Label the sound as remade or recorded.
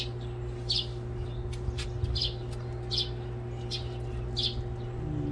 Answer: recorded